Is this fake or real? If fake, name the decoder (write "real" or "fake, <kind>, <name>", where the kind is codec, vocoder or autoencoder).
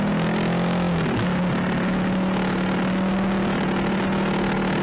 real